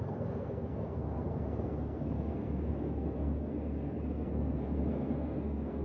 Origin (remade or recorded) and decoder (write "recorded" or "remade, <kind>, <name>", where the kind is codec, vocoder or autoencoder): remade, codec, SNAC